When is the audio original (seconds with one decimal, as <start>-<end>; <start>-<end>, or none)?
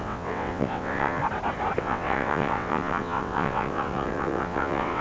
1.2-1.8